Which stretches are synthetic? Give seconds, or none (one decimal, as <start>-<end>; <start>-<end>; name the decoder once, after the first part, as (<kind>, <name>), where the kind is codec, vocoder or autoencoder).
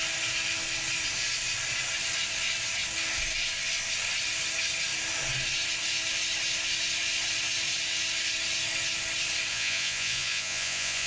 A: 9.5-11.1 (vocoder, Vocos)